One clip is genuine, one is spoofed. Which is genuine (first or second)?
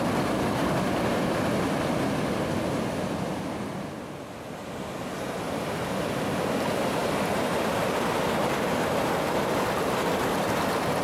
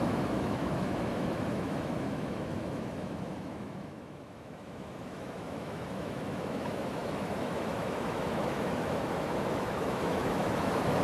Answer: first